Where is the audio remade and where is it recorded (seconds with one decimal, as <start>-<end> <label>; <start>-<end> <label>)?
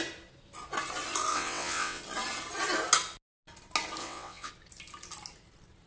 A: 0.0-1.3 recorded; 1.3-2.0 remade; 2.0-4.0 recorded; 4.0-4.5 remade; 4.5-5.9 recorded